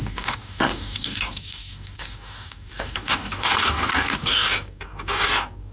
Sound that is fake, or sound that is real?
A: fake